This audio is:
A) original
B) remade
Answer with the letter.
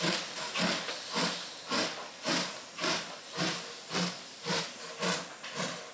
A